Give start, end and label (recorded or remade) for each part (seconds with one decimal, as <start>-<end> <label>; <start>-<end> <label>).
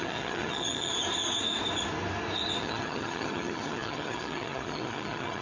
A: 0.0-0.9 remade; 0.9-2.6 recorded; 2.6-5.4 remade